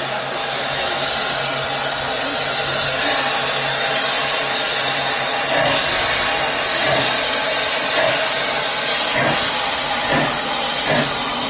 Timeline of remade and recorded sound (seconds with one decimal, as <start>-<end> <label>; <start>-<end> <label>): 0.0-0.4 recorded; 0.4-1.1 remade; 1.1-11.5 recorded